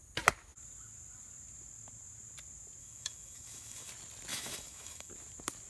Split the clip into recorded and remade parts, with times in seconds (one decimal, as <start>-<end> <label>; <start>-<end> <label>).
0.0-2.8 recorded; 2.8-3.9 remade; 3.9-4.3 recorded; 4.3-5.1 remade; 5.1-5.7 recorded